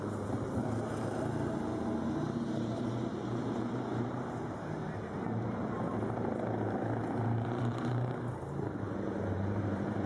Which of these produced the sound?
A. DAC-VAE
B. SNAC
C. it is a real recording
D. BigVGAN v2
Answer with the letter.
D